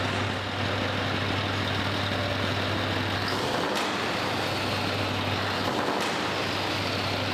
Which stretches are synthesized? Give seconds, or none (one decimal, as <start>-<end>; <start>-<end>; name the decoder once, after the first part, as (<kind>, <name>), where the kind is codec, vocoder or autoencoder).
none